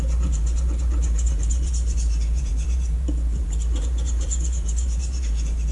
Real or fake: fake